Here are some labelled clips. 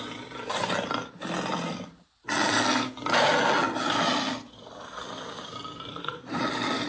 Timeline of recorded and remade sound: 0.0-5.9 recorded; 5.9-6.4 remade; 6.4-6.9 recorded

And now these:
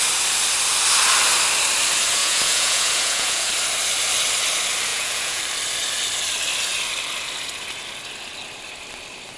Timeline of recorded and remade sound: 0.0-2.2 recorded; 2.2-3.5 remade; 3.5-4.9 recorded; 4.9-5.4 remade; 5.4-9.4 recorded

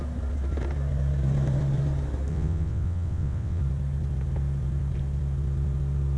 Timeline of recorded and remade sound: 0.0-2.3 recorded; 2.3-3.6 remade; 3.6-6.2 recorded